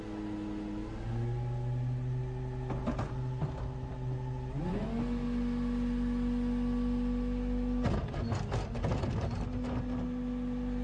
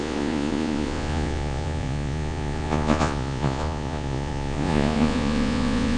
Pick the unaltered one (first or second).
first